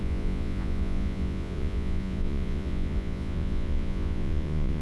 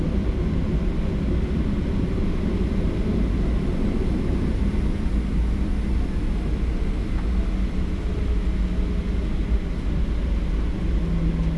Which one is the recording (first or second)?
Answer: second